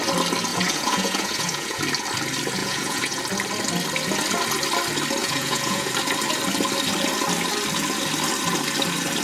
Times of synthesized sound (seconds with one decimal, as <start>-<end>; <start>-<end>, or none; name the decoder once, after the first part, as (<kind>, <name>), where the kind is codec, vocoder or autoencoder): 0.5-1.8 (vocoder, Vocos); 2.6-3.2; 5.2-5.9